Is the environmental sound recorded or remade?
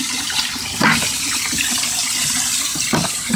recorded